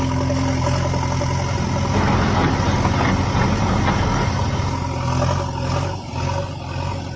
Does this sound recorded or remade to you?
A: recorded